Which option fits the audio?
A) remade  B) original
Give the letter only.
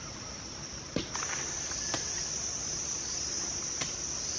B